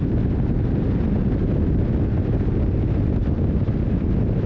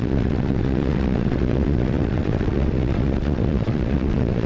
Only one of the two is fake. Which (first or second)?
second